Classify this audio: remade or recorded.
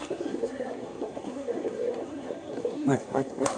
remade